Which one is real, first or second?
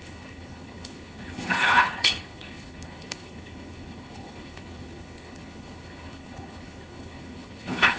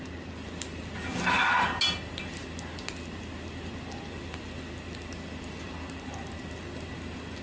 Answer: second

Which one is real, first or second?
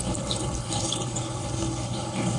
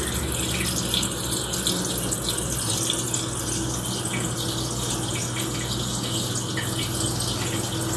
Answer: second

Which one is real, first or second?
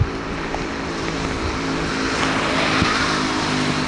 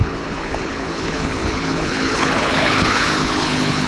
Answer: first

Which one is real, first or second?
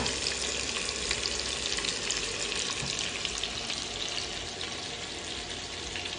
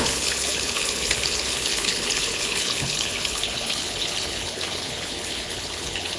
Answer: first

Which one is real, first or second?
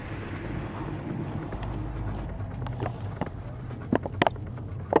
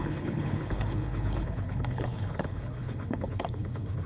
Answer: first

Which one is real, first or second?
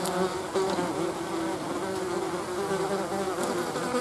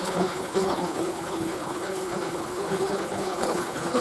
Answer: first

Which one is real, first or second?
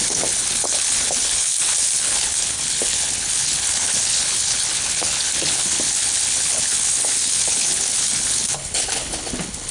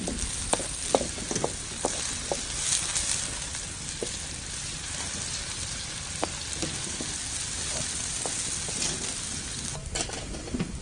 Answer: second